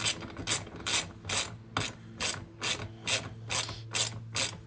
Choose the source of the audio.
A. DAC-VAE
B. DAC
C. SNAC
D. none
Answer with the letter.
D